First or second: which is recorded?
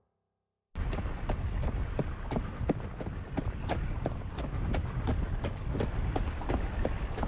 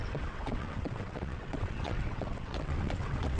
first